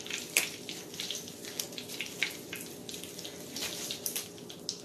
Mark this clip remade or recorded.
recorded